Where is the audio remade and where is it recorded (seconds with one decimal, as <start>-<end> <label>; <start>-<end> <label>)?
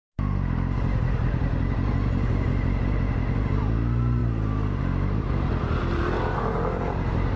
0.0-7.4 recorded